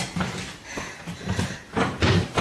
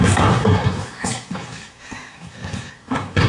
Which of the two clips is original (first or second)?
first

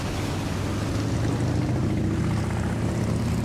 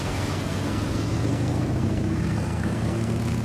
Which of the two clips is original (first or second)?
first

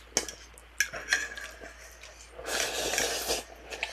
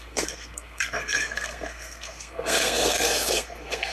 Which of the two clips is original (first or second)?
first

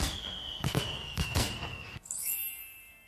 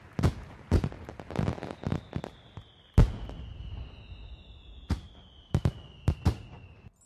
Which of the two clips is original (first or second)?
second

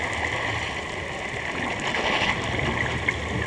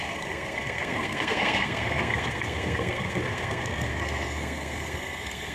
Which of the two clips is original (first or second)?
first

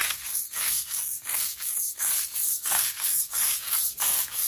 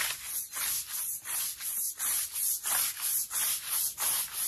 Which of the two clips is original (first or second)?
second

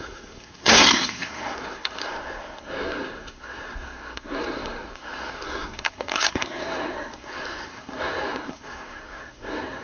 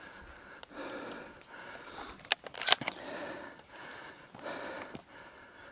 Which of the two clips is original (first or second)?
second